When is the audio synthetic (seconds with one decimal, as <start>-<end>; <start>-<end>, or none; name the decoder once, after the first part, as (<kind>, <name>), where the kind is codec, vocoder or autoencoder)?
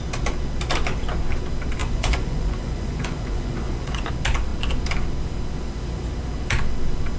1.8-4.1 (vocoder, Vocos)